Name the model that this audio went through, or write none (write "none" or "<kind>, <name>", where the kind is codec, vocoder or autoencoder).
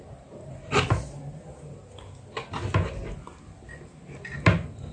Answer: none